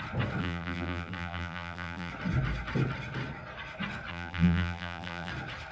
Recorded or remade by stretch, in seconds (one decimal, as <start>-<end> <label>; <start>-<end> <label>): 0.0-0.4 recorded; 0.4-2.1 remade; 2.1-4.1 recorded; 4.1-5.3 remade; 5.3-5.7 recorded

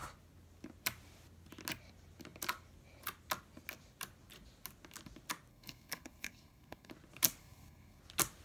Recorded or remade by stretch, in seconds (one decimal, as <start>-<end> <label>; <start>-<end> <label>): 0.0-5.5 recorded; 5.5-6.9 remade; 6.9-7.4 recorded; 7.4-8.0 remade; 8.0-8.4 recorded

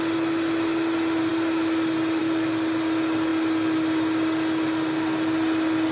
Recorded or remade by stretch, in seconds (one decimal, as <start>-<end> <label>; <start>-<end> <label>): 0.0-5.9 recorded

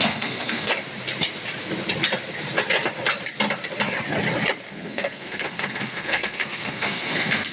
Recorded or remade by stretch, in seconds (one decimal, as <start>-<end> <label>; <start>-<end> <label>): 0.0-0.7 remade; 0.7-4.7 recorded; 4.7-7.5 remade

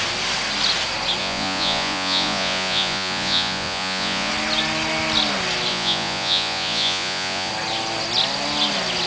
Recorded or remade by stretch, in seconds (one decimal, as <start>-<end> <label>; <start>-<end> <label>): 0.0-1.2 recorded; 1.2-4.3 remade; 4.3-5.7 recorded; 5.7-7.5 remade; 7.5-9.1 recorded

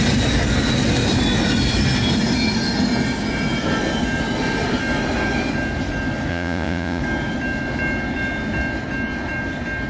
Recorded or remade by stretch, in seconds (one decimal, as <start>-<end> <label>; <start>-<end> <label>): 0.0-6.3 recorded; 6.3-7.0 remade; 7.0-9.9 recorded

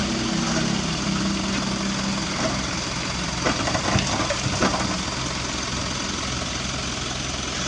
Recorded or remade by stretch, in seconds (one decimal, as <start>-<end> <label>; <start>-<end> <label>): 0.0-7.7 recorded